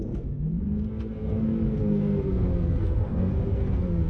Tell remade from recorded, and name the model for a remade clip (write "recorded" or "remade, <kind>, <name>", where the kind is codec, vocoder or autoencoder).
remade, codec, SNAC